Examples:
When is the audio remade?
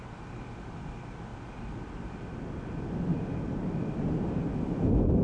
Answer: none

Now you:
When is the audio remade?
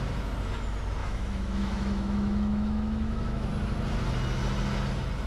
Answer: 1.0-3.5 (autoencoder, DAC-VAE)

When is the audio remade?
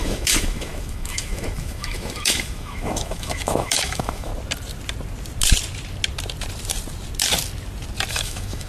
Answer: 0.0-4.3 (autoencoder, DAC-VAE); 8.1-8.7